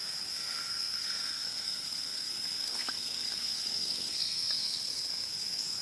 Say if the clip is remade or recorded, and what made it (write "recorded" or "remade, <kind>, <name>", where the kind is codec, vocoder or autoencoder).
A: remade, codec, SNAC